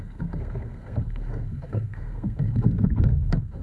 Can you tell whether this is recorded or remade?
remade